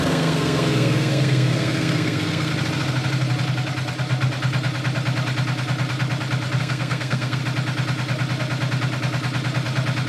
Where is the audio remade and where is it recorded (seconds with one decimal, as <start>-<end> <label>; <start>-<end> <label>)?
0.0-2.5 remade; 2.5-6.6 recorded; 6.6-7.4 remade; 7.4-10.1 recorded